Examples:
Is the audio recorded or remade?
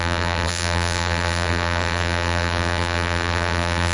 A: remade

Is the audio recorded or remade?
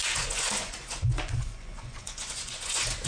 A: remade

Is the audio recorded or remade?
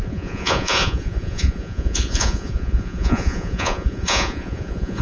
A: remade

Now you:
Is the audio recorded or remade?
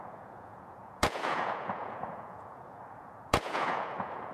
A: remade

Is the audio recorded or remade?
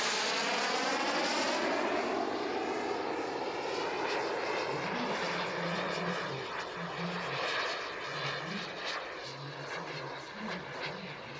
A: recorded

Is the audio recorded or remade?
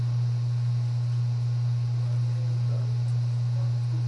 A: recorded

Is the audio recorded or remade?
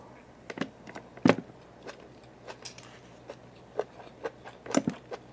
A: recorded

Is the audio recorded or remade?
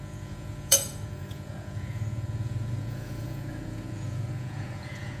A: remade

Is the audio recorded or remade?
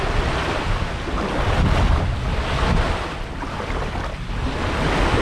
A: recorded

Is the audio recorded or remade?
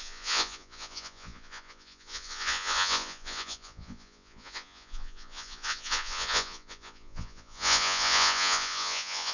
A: remade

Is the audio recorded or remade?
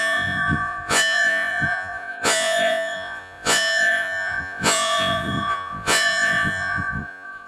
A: remade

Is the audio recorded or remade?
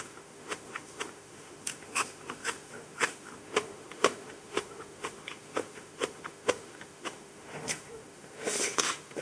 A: remade